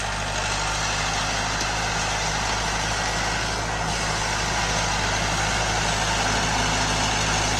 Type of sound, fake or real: real